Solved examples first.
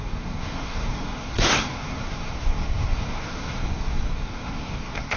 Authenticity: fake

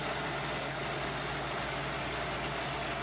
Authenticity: real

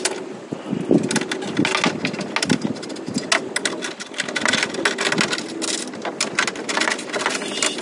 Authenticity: real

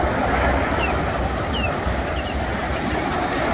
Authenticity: real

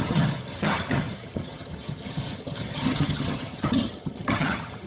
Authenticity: fake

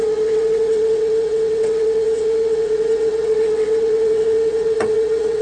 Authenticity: fake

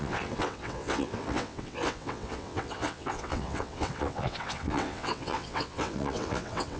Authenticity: fake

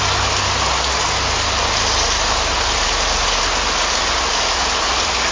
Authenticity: real